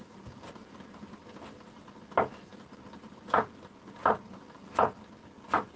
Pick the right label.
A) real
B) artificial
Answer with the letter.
A